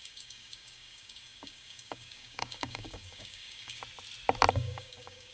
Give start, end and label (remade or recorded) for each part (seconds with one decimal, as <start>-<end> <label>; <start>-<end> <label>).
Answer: 0.0-3.8 remade; 3.8-4.5 recorded; 4.5-5.3 remade